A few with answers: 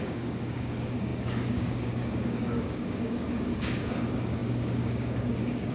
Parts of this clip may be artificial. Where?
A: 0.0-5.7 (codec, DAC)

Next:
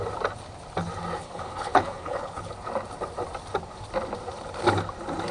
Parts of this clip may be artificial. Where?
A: 1.2-2.5 (codec, HILCodec)

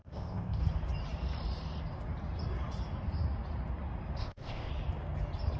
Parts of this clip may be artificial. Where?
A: 0.0-0.6 (codec, ZipCodec); 4.2-4.7

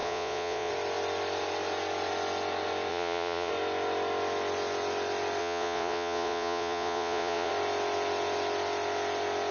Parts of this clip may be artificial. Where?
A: 0.0-0.7 (vocoder, Vocos); 2.9-3.5; 5.4-7.5

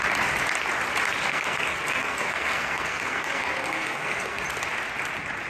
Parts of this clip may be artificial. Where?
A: 1.3-4.4 (codec, SNAC)

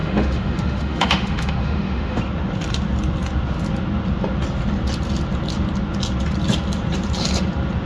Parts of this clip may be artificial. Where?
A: 0.0-2.2 (autoencoder, DAC-VAE)

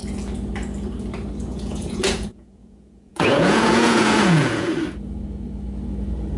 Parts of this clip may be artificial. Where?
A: 1.5-4.7 (vocoder, Vocos)

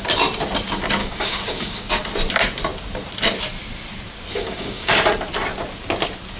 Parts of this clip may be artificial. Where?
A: 1.0-1.9 (codec, DAC); 4.3-4.9